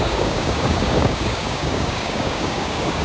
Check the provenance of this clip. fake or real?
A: fake